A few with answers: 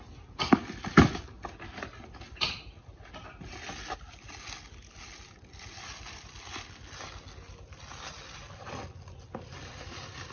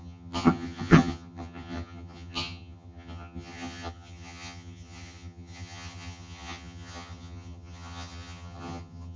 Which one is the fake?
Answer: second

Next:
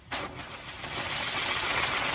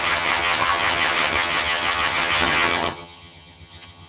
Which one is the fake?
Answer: second